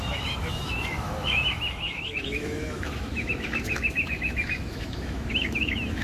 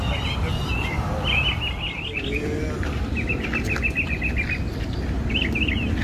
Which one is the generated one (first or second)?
first